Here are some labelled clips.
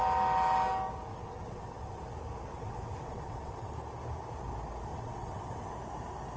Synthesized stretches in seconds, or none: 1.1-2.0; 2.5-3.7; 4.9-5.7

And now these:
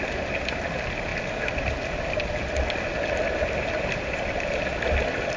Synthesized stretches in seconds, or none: none

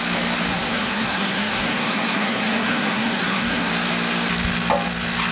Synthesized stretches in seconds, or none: 0.5-3.7

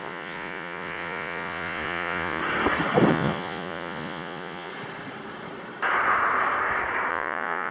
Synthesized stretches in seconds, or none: 0.0-2.4; 3.1-4.7; 7.1-7.7

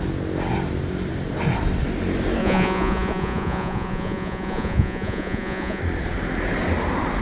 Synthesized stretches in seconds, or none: 2.4-5.8

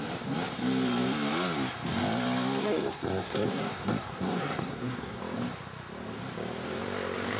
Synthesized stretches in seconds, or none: 2.6-5.2

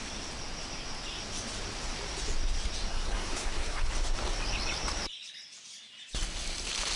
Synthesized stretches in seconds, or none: 2.9-3.9